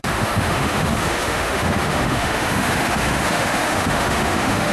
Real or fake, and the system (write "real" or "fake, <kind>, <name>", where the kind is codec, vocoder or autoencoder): fake, autoencoder, DAC-VAE